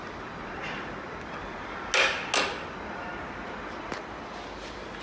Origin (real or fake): real